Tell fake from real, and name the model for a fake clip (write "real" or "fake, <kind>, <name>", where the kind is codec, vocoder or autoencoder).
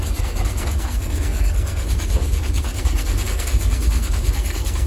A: fake, codec, SNAC